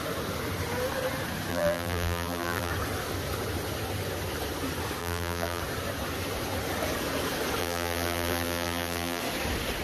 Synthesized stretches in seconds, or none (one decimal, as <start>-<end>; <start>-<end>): 1.5-2.7; 5.0-5.6; 7.6-9.2